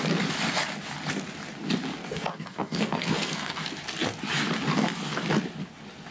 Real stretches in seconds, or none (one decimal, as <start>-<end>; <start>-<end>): 0.0-2.0; 3.6-6.1